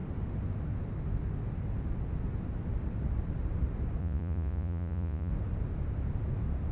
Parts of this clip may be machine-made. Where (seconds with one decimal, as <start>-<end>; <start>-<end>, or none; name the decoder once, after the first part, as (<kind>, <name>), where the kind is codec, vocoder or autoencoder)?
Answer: 4.0-5.3 (vocoder, Vocos)